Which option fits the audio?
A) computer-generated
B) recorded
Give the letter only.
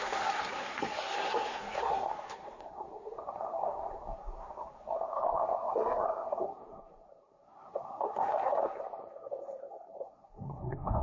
A